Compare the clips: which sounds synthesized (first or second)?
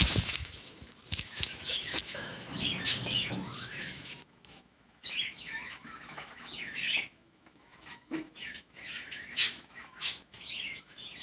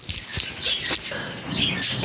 first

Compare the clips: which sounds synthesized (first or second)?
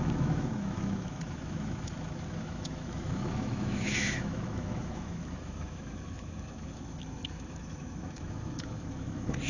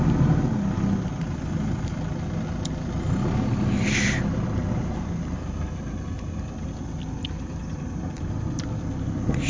first